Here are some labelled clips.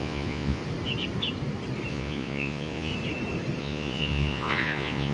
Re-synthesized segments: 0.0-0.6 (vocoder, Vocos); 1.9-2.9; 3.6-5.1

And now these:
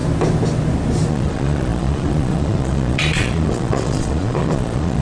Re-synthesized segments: 1.1-5.0 (vocoder, Vocos)